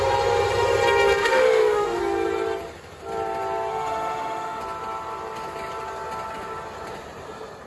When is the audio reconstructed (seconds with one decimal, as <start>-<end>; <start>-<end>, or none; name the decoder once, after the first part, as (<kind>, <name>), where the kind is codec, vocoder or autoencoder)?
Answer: 1.2-2.0 (autoencoder, DAC-VAE); 3.7-4.6